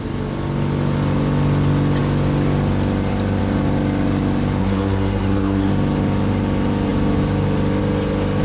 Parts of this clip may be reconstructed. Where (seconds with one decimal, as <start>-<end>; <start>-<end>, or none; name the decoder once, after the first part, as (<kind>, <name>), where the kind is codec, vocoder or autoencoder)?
4.6-5.7 (codec, SNAC)